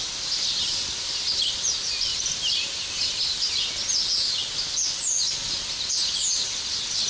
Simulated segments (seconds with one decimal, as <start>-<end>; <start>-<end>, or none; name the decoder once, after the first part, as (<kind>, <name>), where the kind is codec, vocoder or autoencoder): 2.1-3.5 (vocoder, BigVGAN v2)